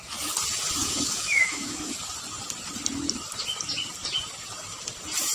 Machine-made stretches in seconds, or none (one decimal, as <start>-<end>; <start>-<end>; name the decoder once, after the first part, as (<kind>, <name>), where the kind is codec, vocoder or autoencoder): 0.8-1.9 (autoencoder, DAC-VAE)